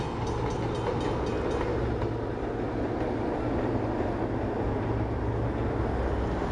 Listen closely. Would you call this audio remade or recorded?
recorded